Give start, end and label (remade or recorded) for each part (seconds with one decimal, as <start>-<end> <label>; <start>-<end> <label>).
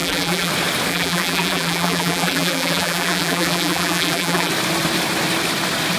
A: 0.0-0.5 remade; 0.5-0.9 recorded; 0.9-4.5 remade; 4.5-6.0 recorded